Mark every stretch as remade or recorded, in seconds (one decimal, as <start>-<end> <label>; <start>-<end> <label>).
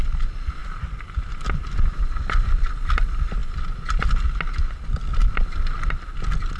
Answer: 0.0-6.6 recorded